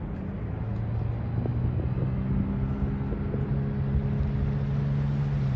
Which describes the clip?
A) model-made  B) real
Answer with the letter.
B